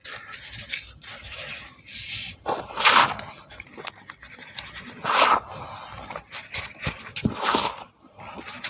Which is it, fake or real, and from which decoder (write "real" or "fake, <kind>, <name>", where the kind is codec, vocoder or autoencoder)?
real